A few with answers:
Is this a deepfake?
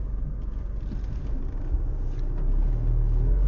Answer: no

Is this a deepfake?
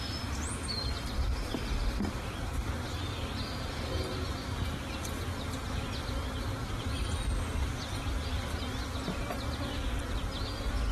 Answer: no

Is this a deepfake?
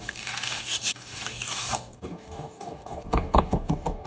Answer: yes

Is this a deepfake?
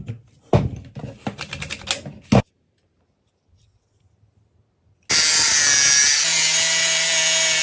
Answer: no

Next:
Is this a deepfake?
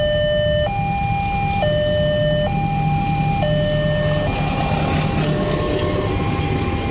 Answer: no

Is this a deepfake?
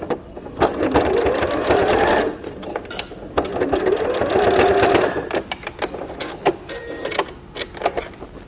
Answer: no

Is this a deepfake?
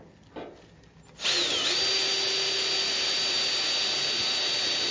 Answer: no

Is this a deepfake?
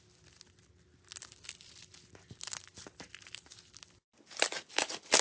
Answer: no